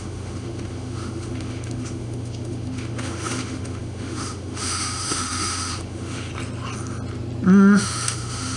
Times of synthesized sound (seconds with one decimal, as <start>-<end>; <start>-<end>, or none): 0.0-6.3; 7.8-8.6